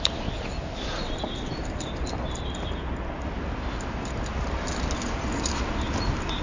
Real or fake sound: real